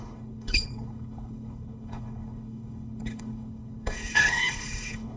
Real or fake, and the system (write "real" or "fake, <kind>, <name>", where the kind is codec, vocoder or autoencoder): fake, codec, HILCodec